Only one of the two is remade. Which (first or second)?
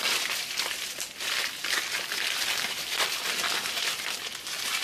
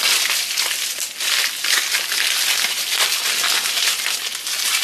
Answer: first